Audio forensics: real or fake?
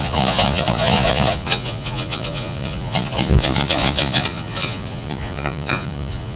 fake